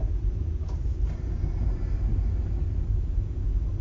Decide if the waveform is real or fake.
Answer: real